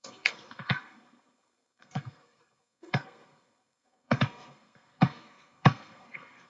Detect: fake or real fake